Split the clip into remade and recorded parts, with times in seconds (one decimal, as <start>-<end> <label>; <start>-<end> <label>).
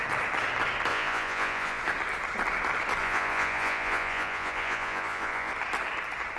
0.0-0.9 recorded; 0.9-1.8 remade; 1.8-3.0 recorded; 3.0-5.5 remade; 5.5-6.4 recorded